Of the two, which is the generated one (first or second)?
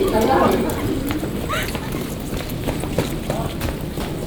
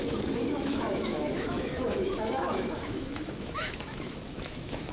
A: second